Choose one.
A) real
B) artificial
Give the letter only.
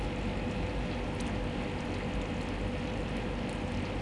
A